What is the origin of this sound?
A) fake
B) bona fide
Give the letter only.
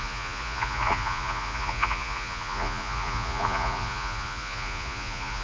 A